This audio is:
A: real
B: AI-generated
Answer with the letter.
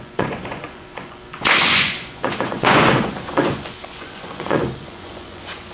B